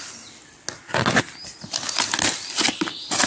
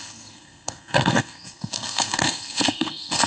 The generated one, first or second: second